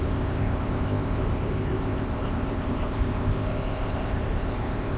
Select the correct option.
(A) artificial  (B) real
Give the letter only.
A